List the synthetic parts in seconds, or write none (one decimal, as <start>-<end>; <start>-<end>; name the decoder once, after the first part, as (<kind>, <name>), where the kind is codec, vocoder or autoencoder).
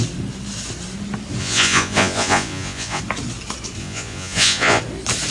1.4-3.0 (vocoder, Vocos); 3.8-4.8